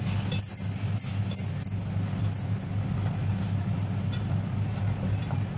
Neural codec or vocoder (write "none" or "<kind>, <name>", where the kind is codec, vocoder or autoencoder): none